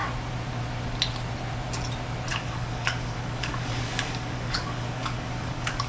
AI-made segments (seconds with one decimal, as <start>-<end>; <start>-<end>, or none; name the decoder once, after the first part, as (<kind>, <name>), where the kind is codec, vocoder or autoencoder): 2.3-5.9 (codec, DAC)

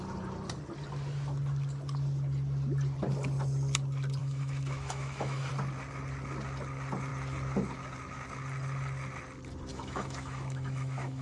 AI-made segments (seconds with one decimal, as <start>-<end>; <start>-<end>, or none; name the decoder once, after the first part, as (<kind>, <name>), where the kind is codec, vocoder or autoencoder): 4.2-5.5 (autoencoder, DAC-VAE); 9.7-11.2